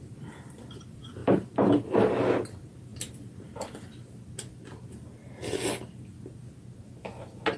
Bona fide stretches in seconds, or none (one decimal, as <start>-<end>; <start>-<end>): 2.9-7.6